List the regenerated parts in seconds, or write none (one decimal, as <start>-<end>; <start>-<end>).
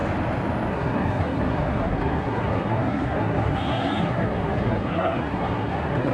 0.7-6.1